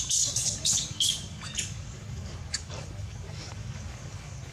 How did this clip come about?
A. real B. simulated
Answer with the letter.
B